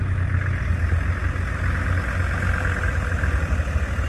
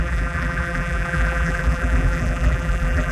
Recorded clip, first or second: first